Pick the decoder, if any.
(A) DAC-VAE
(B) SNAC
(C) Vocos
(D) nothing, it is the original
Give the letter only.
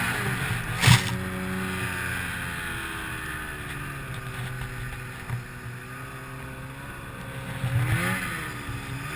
D